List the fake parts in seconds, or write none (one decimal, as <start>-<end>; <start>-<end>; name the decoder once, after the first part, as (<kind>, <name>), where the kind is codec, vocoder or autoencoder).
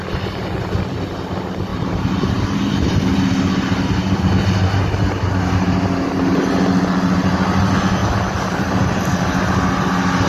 1.7-4.3 (vocoder, BigVGAN v2); 8.0-9.0